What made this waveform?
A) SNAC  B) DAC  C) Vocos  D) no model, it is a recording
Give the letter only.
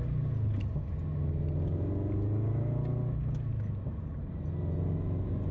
D